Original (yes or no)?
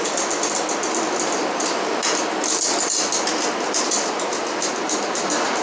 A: yes